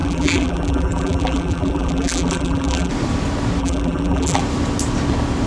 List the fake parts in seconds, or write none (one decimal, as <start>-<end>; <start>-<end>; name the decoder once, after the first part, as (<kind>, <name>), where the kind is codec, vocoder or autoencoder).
0.0-2.9 (vocoder, BigVGAN v2); 3.6-4.4